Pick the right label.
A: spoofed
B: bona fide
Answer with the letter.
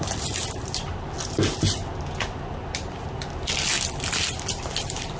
B